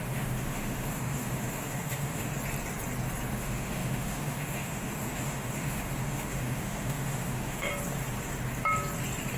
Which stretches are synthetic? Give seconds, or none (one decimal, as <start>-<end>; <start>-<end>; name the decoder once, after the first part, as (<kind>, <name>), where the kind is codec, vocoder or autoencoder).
0.0-2.3 (autoencoder, DAC-VAE); 3.3-7.7